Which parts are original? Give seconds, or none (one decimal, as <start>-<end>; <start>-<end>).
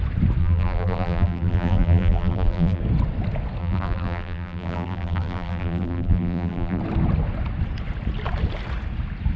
0.0-0.4; 2.8-3.6; 6.8-9.4